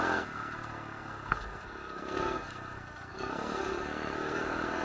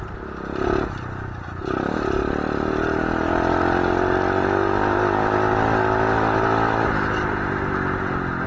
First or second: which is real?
second